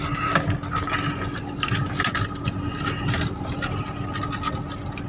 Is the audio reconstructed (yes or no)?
no